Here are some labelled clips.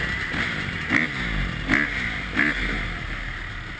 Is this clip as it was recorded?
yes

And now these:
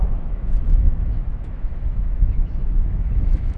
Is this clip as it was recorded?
no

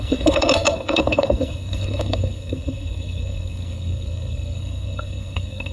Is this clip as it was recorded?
no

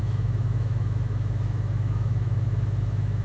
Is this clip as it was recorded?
no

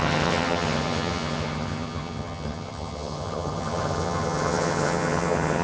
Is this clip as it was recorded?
no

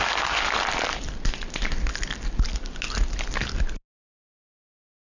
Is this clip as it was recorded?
yes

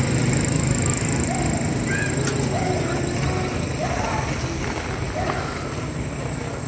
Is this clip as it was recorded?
yes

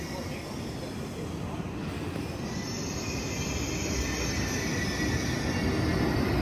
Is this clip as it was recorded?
yes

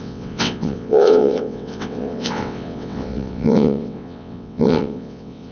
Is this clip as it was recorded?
no